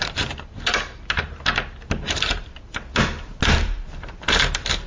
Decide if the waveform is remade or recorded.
recorded